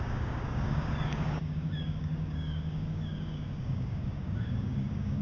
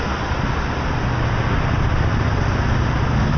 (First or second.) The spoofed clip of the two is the first